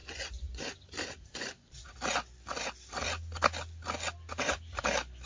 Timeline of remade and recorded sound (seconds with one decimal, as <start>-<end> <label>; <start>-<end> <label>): 0.0-0.6 remade; 0.6-1.3 recorded; 1.3-1.8 remade; 1.8-5.3 recorded